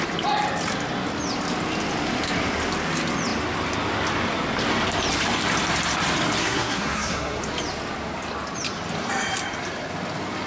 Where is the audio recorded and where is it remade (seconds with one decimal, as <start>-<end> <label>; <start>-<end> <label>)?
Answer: 0.0-6.4 recorded; 6.4-7.4 remade; 7.4-10.5 recorded